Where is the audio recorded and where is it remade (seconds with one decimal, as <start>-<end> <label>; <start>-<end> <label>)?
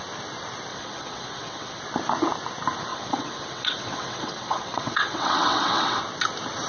0.0-0.7 recorded; 0.7-1.8 remade; 1.8-2.9 recorded; 2.9-6.0 remade; 6.0-6.7 recorded